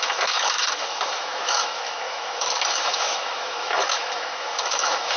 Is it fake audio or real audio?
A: fake